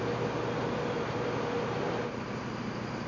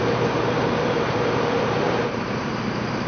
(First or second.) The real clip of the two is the first